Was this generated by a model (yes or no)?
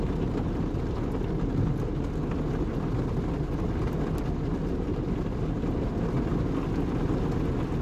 no